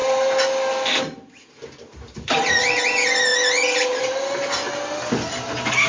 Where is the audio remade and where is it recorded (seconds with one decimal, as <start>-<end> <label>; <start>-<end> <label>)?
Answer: 0.0-5.9 recorded